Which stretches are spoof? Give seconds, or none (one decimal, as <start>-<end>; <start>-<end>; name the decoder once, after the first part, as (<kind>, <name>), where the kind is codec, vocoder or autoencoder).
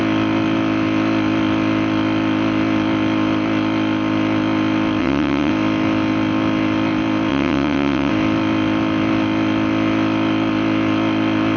5.0-5.5 (vocoder, WaveNeXt); 7.3-8.1